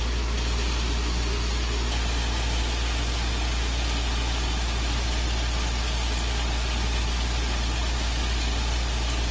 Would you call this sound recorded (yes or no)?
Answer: yes